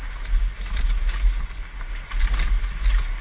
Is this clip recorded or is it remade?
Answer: recorded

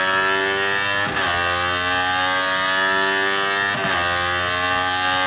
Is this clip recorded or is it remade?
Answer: recorded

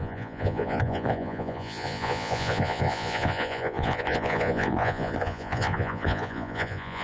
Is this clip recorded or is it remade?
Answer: remade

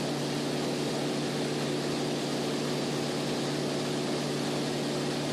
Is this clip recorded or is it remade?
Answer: recorded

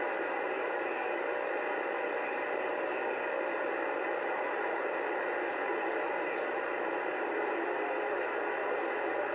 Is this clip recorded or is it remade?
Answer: recorded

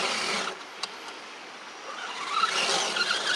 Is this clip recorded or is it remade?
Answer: recorded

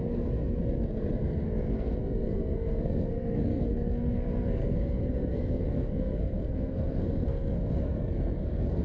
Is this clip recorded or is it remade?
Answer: remade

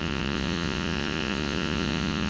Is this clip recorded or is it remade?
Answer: remade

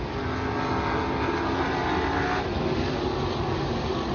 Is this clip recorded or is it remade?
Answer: recorded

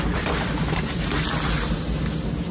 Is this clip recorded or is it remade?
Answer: recorded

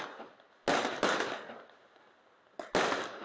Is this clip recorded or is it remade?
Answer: recorded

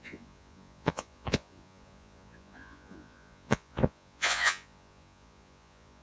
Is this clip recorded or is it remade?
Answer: remade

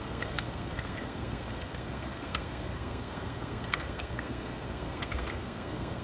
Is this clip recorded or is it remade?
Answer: remade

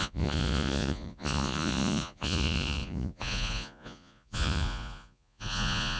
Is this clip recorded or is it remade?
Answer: remade